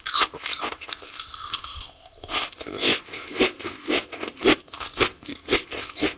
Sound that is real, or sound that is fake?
fake